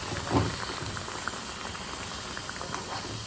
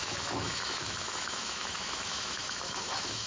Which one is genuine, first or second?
first